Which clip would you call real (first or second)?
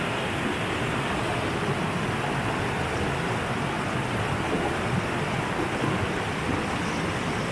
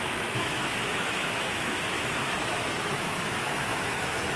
first